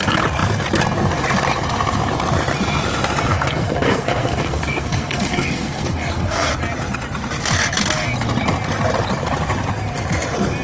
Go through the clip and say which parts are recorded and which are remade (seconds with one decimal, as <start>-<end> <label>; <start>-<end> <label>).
0.0-3.3 recorded; 3.3-6.5 remade; 6.5-10.6 recorded